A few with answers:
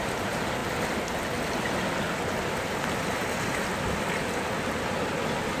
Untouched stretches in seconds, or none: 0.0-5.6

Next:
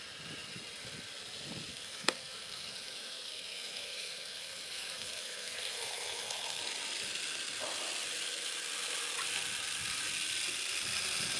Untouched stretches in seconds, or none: 0.0-1.7; 6.6-11.4